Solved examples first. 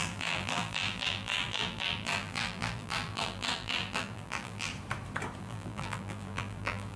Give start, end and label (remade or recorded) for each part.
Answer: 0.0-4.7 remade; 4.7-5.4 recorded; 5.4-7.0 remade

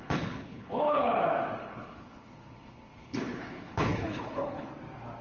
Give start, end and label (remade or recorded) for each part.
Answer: 0.0-1.2 remade; 1.2-1.6 recorded; 1.6-4.7 remade; 4.7-5.2 recorded

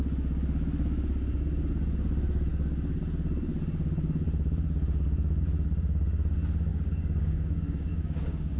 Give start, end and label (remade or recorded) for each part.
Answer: 0.0-6.7 recorded; 6.7-8.6 remade

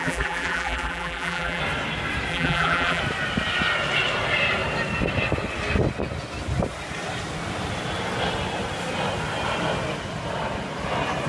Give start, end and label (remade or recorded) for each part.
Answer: 0.0-1.6 remade; 1.6-2.3 recorded; 2.3-3.0 remade; 3.0-11.3 recorded

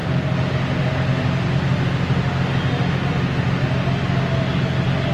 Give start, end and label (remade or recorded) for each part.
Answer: 0.0-5.1 recorded

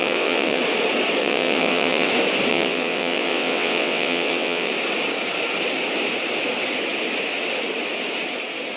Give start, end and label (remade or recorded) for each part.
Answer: 0.0-0.6 remade; 0.6-1.2 recorded; 1.2-2.1 remade; 2.1-2.5 recorded; 2.5-4.7 remade; 4.7-8.8 recorded

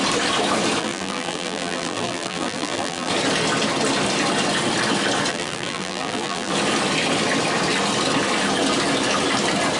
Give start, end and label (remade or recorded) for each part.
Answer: 0.0-0.8 recorded; 0.8-3.1 remade; 3.1-5.3 recorded; 5.3-6.5 remade; 6.5-9.8 recorded